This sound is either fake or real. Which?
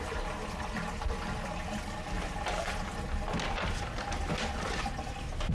real